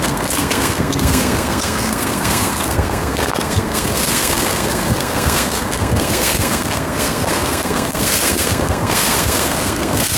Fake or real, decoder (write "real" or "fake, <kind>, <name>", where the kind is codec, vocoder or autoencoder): fake, codec, SNAC